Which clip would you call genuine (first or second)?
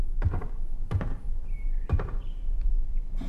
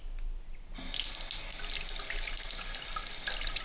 second